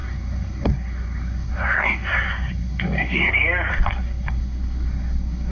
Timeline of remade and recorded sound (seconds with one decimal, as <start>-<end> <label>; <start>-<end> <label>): 0.0-3.3 remade; 3.3-3.7 recorded; 3.7-5.5 remade